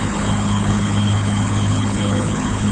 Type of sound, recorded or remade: remade